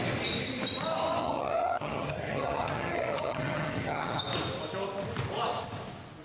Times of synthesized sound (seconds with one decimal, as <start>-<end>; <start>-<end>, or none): 1.2-4.2